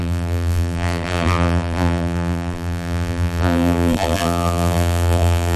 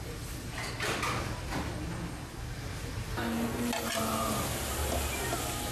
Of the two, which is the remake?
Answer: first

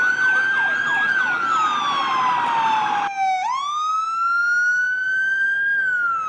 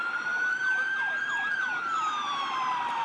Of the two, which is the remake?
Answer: second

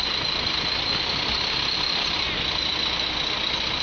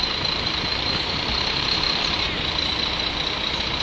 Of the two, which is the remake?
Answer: second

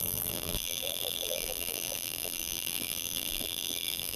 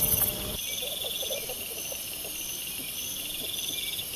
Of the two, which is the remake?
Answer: first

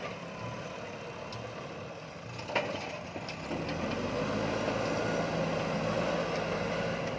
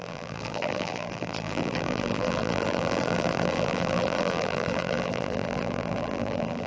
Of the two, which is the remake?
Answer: second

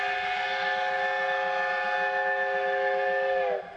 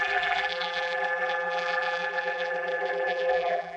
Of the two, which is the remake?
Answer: second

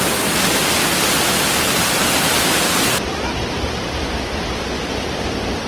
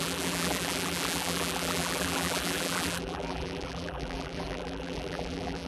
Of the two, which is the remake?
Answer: second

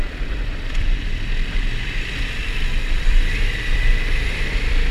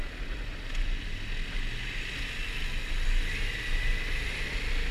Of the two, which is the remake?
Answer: first